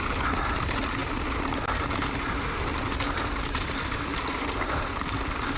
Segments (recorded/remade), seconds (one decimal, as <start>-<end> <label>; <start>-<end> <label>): 0.0-5.6 recorded

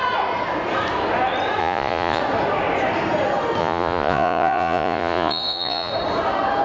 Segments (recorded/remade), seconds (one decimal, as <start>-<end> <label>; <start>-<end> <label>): 0.0-1.6 recorded; 1.6-2.2 remade; 2.2-3.6 recorded; 3.6-5.9 remade; 5.9-6.6 recorded

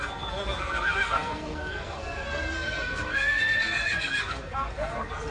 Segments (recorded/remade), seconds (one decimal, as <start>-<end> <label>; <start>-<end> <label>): 0.0-5.3 remade

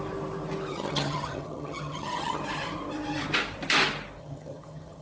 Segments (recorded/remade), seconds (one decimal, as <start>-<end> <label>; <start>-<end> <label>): 0.0-0.7 recorded; 0.7-2.4 remade; 2.4-4.2 recorded; 4.2-5.0 remade